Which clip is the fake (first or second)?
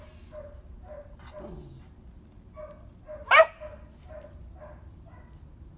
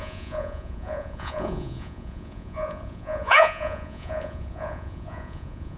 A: second